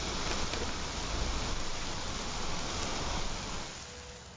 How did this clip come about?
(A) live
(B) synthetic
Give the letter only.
A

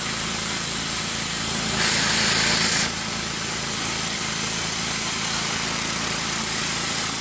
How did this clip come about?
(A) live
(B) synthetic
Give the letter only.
B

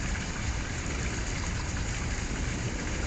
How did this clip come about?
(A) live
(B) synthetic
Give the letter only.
B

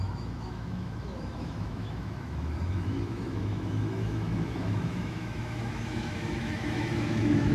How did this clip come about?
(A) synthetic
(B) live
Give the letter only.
A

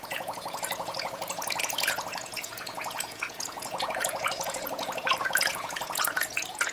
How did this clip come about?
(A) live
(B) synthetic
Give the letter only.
B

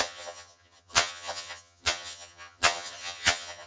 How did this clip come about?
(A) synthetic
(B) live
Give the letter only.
A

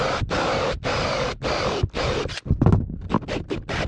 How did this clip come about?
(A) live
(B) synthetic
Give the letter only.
A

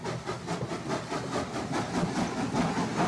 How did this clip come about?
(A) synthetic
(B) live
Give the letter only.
B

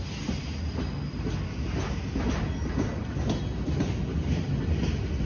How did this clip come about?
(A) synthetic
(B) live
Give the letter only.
B